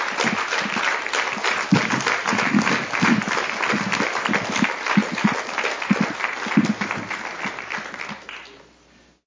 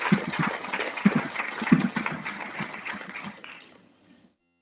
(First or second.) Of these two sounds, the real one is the first